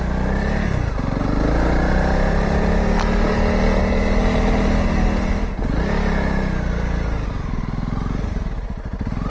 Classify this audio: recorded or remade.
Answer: recorded